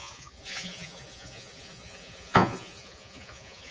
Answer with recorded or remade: remade